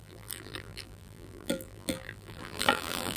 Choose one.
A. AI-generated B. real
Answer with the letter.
A